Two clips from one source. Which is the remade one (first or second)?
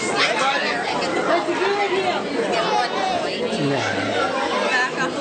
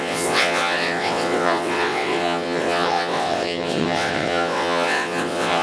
second